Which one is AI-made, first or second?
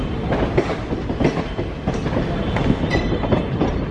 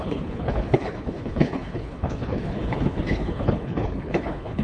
second